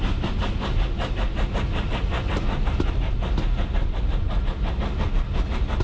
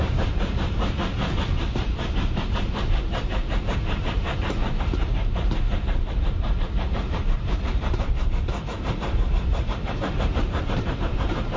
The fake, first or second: second